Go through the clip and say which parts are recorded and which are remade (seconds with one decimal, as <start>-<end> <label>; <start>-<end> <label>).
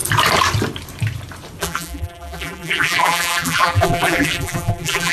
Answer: 0.0-1.6 recorded; 1.6-5.1 remade